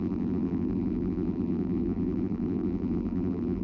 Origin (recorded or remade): remade